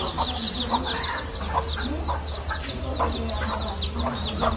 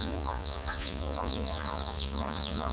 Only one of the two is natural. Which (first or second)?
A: first